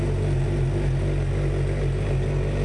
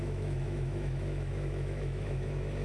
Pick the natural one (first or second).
first